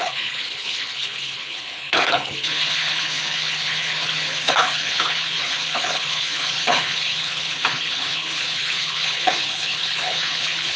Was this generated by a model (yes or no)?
yes